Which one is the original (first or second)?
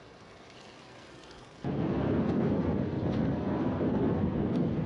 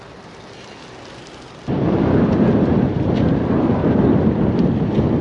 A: second